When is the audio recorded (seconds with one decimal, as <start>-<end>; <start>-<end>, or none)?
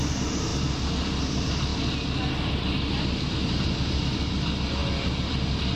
0.0-5.8